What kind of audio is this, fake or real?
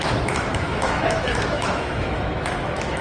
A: fake